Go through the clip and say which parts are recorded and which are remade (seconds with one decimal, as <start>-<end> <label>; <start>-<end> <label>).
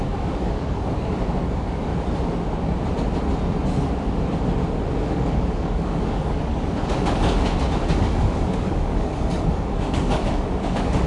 0.0-1.9 remade; 1.9-5.1 recorded; 5.1-11.1 remade